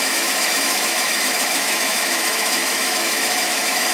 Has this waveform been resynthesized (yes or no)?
yes